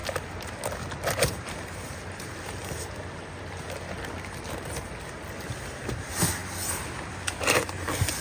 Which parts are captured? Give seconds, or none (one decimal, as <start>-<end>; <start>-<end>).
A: 0.0-8.2